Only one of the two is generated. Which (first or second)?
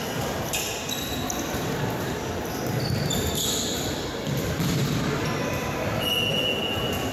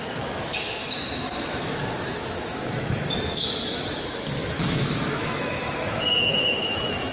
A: second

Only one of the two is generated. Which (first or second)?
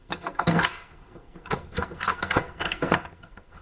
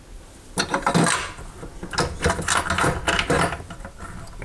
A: first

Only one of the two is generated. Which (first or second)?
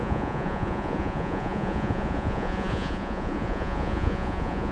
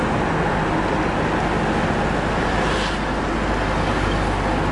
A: first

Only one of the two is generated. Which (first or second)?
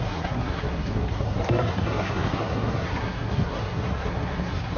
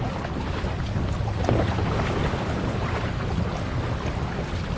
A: first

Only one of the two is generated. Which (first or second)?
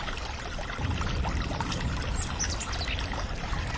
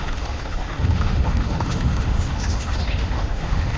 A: second